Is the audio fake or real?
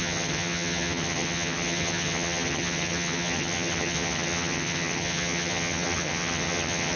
fake